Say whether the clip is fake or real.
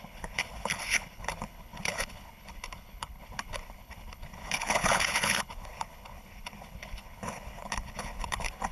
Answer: fake